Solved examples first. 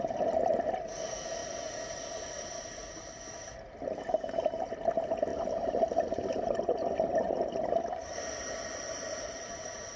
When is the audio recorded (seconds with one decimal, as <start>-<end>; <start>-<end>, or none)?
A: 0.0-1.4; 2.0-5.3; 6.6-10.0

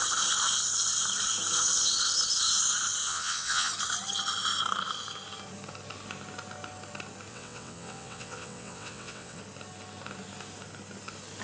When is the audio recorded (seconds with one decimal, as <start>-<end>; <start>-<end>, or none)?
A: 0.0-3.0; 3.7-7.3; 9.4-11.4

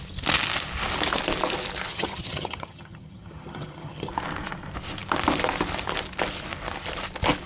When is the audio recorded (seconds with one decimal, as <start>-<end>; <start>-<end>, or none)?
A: 0.0-1.9; 4.1-7.5

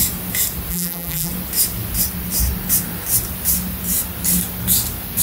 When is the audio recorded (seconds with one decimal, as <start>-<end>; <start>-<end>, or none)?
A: 0.0-0.7; 1.3-5.2